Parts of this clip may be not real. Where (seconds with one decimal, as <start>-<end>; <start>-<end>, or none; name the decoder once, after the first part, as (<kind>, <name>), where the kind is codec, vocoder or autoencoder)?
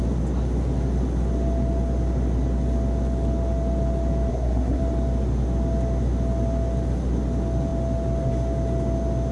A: 4.3-4.8 (codec, SNAC)